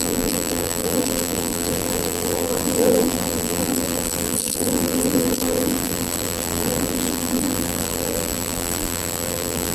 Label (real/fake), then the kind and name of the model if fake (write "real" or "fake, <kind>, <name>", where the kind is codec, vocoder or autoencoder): fake, vocoder, BigVGAN v2